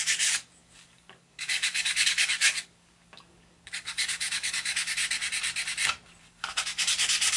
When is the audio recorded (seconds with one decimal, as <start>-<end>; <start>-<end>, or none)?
5.0-6.2